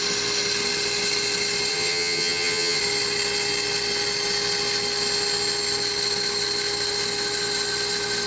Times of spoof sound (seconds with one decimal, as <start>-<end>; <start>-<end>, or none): 1.7-2.8